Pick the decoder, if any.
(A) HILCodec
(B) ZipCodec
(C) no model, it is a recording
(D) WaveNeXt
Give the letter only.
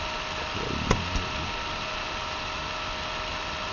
C